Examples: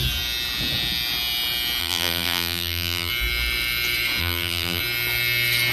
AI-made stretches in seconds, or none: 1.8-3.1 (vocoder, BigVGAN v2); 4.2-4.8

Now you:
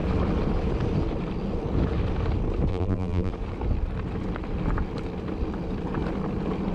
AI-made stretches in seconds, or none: 2.7-3.3 (vocoder, BigVGAN v2)

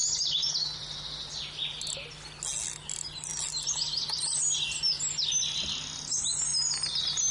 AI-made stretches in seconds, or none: 0.0-0.5 (vocoder, BigVGAN v2)

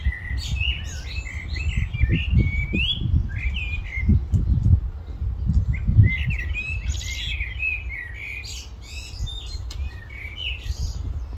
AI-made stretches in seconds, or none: 5.9-6.4 (vocoder, BigVGAN v2)

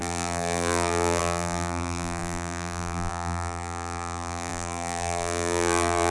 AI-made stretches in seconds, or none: 0.0-6.1 (vocoder, BigVGAN v2)

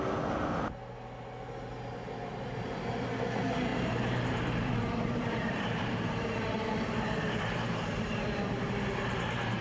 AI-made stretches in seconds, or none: 3.7-8.7 (vocoder, BigVGAN v2)